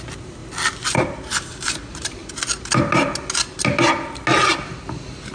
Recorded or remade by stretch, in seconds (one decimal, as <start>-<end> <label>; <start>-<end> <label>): 0.0-0.4 remade; 0.4-1.0 recorded; 1.0-2.2 remade; 2.2-5.3 recorded